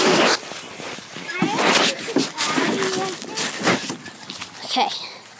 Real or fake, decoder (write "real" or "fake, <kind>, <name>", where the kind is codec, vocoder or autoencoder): real